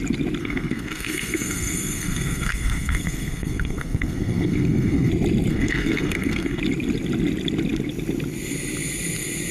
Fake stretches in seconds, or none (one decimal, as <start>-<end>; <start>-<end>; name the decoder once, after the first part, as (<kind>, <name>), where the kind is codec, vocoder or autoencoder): 0.4-5.1 (codec, SNAC); 5.5-6.6